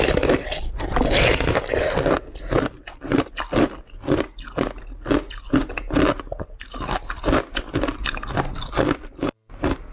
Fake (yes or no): no